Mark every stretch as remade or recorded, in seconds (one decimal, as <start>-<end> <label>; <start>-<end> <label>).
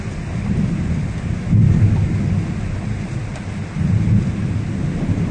0.0-1.6 recorded; 1.6-2.3 remade; 2.3-5.3 recorded